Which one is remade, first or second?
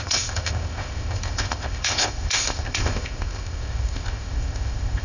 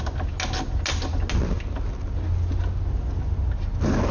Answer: first